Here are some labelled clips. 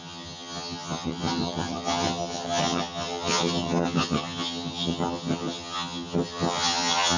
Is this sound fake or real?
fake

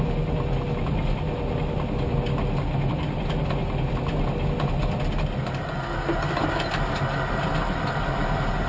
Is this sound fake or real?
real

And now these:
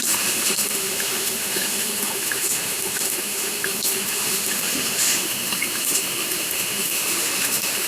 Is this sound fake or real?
fake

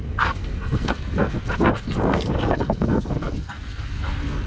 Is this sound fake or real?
fake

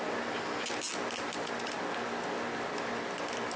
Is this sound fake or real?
real